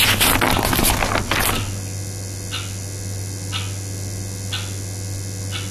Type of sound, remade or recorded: recorded